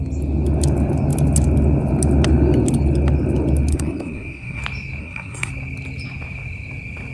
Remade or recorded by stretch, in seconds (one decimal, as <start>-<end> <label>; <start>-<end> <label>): 0.0-3.7 recorded; 3.7-4.6 remade; 4.6-5.0 recorded; 5.0-5.5 remade; 5.5-7.1 recorded